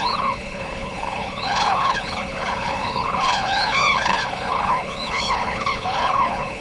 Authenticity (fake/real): fake